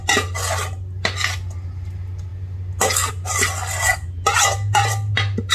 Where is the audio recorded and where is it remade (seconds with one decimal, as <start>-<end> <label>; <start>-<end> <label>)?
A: 0.0-5.5 recorded